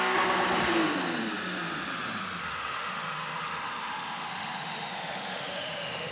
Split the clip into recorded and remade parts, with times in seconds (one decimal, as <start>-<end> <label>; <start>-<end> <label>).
0.0-2.4 recorded; 2.4-6.1 remade

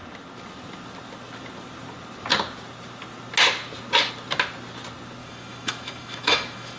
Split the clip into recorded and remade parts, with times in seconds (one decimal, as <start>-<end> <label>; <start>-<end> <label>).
0.0-5.2 recorded; 5.2-6.8 remade